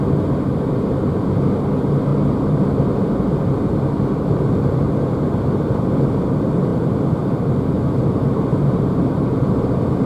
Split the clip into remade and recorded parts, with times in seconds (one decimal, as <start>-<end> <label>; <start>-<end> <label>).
0.0-2.1 recorded; 2.1-2.7 remade; 2.7-6.7 recorded; 6.7-7.5 remade; 7.5-10.1 recorded